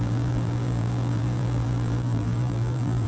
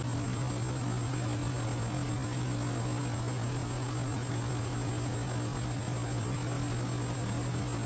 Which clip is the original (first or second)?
second